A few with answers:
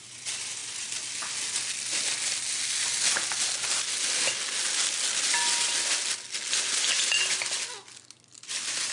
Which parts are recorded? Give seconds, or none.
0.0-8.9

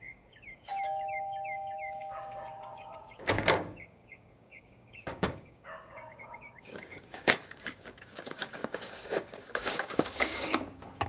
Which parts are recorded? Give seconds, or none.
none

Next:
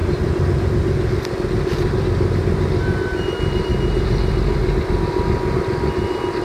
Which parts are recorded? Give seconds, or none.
0.0-6.4

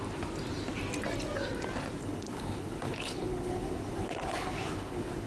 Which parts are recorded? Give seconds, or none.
0.0-2.0

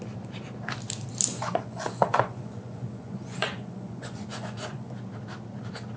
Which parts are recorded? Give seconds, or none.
0.0-1.3; 4.9-6.0